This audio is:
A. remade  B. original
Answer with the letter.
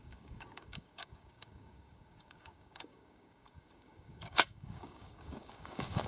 A